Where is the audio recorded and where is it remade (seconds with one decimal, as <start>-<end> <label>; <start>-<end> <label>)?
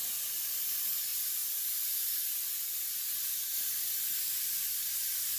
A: 0.0-5.4 recorded